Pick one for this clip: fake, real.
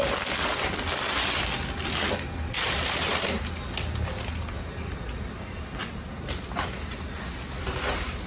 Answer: real